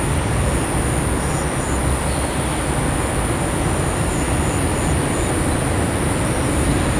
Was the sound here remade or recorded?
recorded